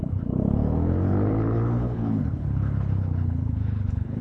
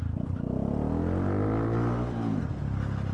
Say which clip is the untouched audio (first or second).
second